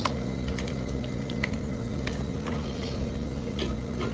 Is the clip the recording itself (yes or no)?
no